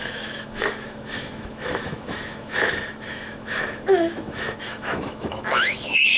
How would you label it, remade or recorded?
remade